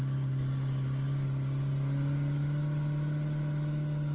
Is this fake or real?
real